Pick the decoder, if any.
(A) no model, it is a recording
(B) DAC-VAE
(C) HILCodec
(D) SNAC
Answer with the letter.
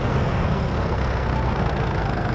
D